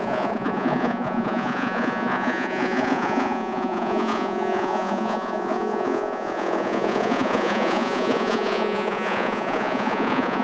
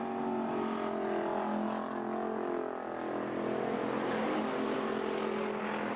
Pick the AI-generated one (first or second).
first